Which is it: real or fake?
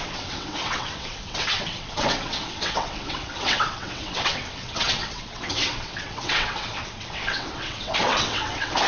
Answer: fake